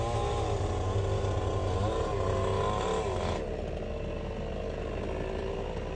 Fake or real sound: real